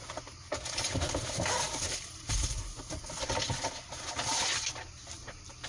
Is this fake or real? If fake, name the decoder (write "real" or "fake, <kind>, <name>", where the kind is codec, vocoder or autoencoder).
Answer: real